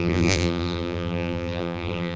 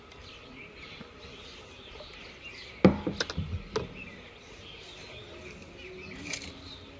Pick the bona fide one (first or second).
second